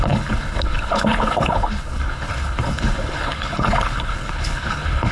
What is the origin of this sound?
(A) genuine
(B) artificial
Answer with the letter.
B